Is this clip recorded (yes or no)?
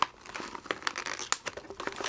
yes